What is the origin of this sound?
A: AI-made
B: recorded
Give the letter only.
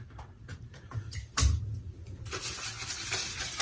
B